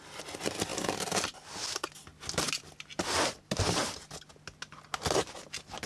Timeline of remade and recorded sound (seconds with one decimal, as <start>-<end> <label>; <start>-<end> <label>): 0.0-5.9 recorded